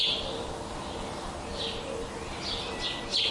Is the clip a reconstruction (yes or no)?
no